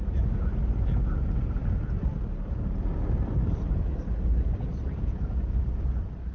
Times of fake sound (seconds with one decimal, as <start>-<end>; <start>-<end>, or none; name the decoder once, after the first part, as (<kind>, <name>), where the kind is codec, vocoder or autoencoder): none